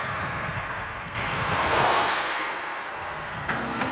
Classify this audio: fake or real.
fake